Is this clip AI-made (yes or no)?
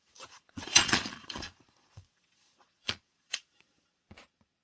yes